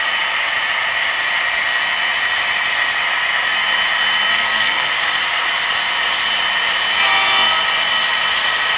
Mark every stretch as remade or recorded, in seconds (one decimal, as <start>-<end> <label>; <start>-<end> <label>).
0.0-4.3 recorded; 4.3-4.9 remade; 4.9-8.8 recorded